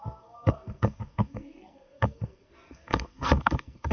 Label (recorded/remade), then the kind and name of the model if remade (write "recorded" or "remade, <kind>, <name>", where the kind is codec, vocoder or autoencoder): remade, codec, SNAC